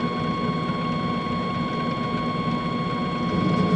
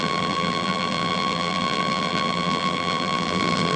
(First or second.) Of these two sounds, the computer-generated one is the second